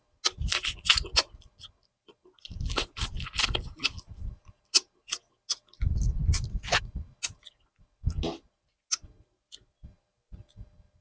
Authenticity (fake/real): real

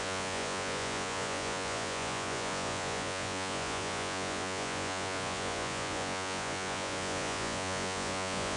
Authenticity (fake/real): fake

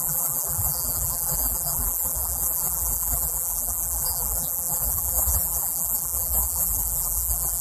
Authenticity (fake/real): fake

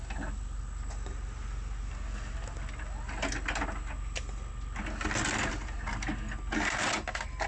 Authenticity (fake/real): real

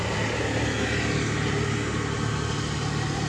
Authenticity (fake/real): real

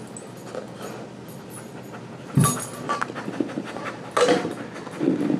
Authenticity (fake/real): real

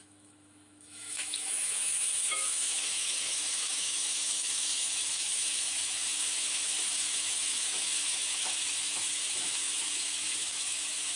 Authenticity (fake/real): fake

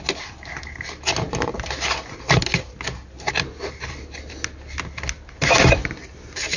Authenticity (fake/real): real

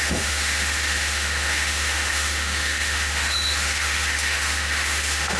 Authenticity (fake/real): fake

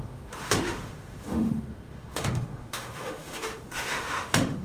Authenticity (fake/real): fake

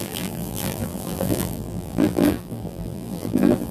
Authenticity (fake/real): fake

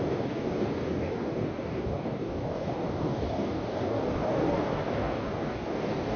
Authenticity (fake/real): fake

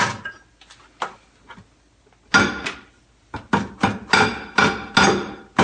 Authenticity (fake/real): real